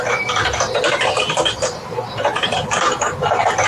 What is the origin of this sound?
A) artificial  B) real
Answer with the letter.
A